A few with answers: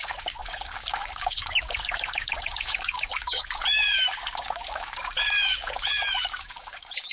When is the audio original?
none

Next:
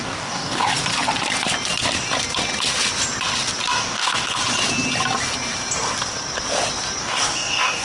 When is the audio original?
0.7-3.8; 4.4-7.0

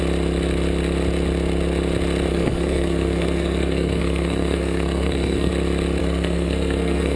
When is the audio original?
0.0-2.3; 5.5-6.0

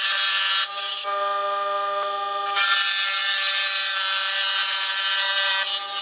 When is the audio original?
0.0-6.0

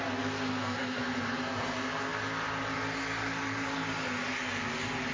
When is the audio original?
0.0-0.5; 1.0-5.1

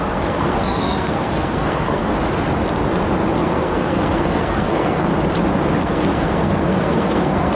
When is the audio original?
2.1-3.4; 5.1-5.8

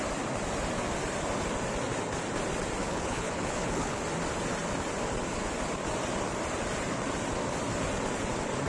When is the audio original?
0.0-2.8; 4.0-8.7